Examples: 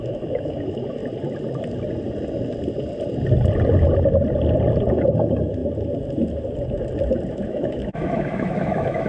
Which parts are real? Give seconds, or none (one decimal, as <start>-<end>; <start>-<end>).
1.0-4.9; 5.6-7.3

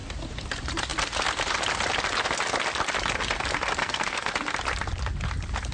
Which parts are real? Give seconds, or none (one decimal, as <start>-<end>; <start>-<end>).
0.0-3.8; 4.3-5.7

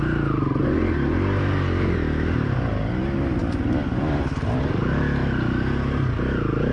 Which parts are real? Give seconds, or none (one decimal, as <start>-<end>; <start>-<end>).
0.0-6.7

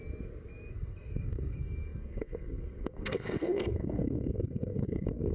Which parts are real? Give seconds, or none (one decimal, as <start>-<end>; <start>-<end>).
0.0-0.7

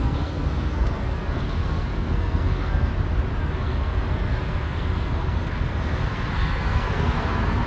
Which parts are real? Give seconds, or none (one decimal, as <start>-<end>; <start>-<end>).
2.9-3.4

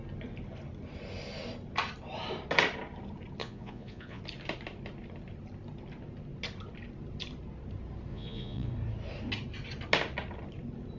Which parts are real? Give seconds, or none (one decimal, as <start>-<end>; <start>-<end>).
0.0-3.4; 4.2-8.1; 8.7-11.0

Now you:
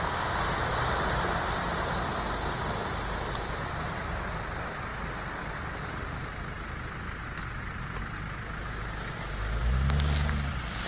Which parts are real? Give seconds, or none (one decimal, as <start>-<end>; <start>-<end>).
0.0-10.9

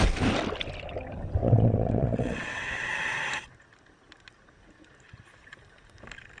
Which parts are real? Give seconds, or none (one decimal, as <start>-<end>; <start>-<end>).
0.0-1.4; 2.9-6.4